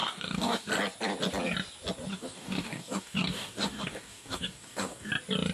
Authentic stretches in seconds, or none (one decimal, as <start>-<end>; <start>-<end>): 0.7-2.1; 5.1-5.5